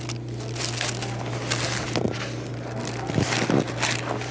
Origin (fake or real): real